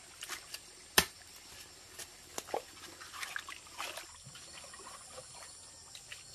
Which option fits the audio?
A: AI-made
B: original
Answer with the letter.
B